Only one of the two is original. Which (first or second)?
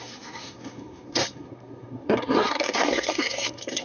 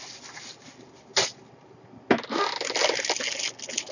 second